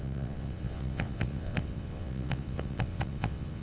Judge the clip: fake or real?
fake